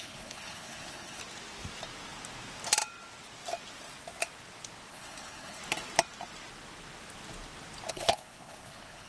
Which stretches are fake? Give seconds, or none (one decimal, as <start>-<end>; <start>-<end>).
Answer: 0.0-1.2; 4.9-5.6; 7.9-9.1